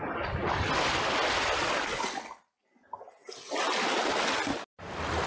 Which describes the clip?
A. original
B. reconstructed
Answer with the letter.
A